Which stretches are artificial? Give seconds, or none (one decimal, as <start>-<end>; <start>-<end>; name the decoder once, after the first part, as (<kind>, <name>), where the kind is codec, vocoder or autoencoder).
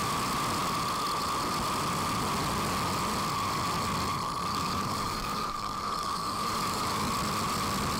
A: 4.5-7.1 (codec, DAC)